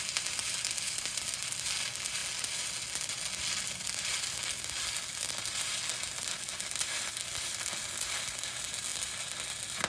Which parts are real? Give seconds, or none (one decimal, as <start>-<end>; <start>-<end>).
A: 0.0-9.9